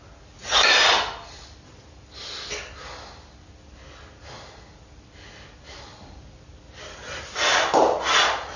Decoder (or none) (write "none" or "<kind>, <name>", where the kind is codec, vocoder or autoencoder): none